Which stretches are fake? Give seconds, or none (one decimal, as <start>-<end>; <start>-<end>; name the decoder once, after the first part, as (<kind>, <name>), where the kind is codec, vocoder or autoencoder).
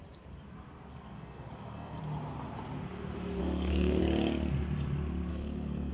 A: 0.9-2.0 (codec, SNAC); 3.4-4.0; 5.3-5.9